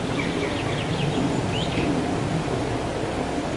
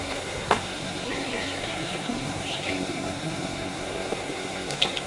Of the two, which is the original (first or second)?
first